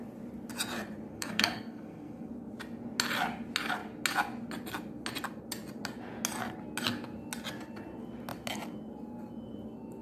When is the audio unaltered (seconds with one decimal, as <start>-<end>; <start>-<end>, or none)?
0.0-1.1; 2.3-10.0